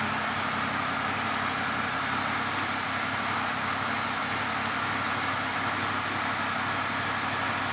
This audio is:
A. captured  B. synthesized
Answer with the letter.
A